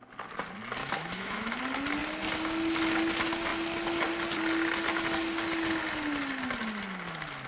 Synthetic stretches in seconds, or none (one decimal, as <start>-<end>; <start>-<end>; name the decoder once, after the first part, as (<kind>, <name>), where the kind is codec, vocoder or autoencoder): 0.8-1.6 (autoencoder, DAC-VAE)